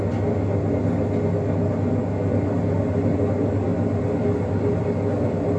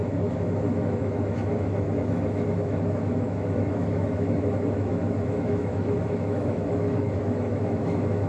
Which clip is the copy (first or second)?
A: second